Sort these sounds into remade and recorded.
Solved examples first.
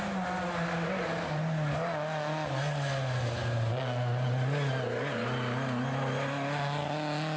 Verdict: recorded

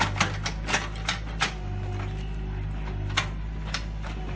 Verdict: recorded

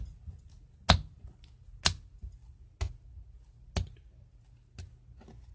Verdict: recorded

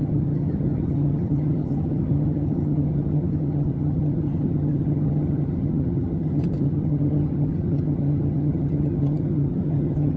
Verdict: remade